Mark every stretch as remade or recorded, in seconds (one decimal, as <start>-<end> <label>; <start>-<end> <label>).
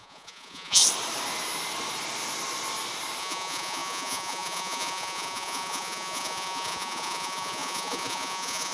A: 0.0-0.8 remade; 0.8-3.2 recorded; 3.2-8.7 remade